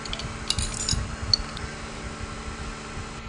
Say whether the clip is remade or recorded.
recorded